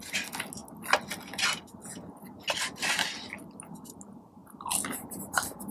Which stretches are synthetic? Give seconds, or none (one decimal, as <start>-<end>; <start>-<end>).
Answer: none